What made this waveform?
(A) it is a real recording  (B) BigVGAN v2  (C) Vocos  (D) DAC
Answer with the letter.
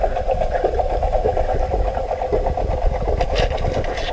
B